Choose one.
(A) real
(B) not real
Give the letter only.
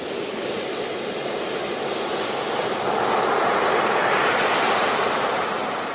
A